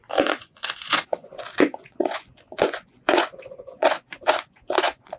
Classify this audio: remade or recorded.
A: remade